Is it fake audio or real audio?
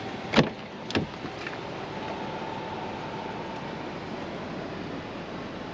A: real